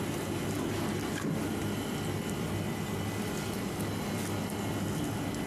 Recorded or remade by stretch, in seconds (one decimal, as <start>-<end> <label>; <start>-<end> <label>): 0.0-5.5 recorded